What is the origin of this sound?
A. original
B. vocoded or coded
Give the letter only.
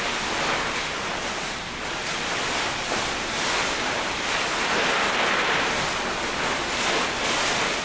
A